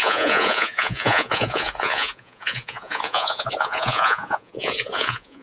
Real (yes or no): no